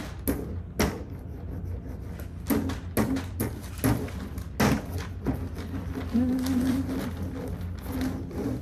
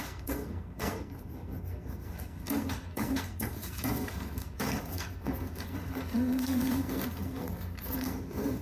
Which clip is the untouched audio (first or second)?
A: first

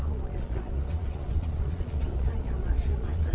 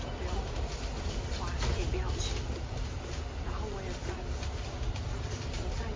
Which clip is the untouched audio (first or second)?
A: second